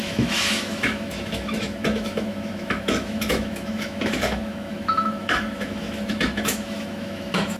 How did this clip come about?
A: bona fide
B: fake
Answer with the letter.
B